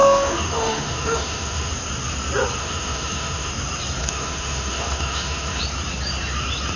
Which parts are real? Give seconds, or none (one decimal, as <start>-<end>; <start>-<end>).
1.7-2.6; 3.5-4.0; 5.6-6.8